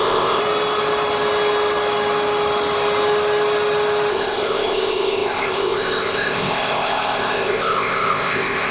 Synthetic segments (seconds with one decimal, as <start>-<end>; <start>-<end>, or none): 0.0-0.4; 4.1-8.7

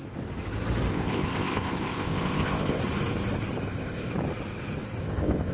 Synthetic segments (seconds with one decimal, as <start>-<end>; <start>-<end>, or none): 0.9-2.8; 3.6-4.1; 5.0-5.5